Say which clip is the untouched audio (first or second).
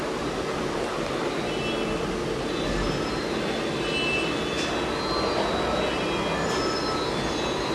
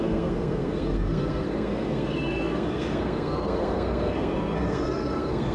first